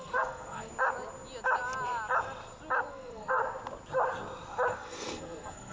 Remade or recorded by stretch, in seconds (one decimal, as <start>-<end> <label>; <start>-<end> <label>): 0.0-0.7 remade; 0.7-2.9 recorded; 2.9-3.4 remade; 3.4-4.7 recorded; 4.7-5.7 remade